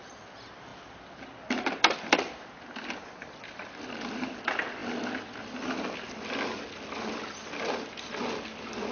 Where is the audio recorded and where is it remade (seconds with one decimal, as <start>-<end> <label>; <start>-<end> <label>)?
0.0-8.9 recorded